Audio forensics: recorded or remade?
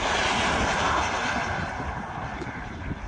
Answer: recorded